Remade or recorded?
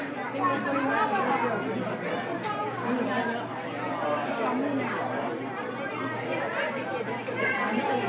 recorded